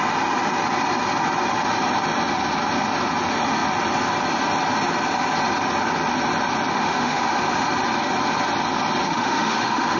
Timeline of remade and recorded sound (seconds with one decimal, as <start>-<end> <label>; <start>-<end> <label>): 0.0-6.7 recorded; 6.7-7.4 remade; 7.4-9.1 recorded; 9.1-10.0 remade